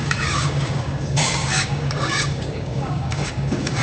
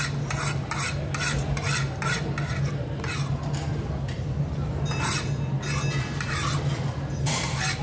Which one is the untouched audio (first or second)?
second